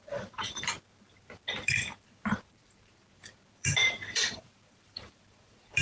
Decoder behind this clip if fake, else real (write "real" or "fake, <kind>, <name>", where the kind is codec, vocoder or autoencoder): fake, vocoder, BigVGAN v2